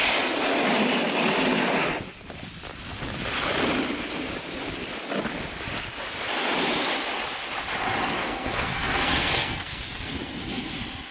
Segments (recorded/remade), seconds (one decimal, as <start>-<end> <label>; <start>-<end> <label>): 0.0-8.2 recorded; 8.2-10.7 remade; 10.7-11.1 recorded